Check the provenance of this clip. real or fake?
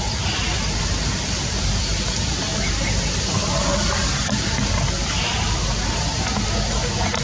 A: real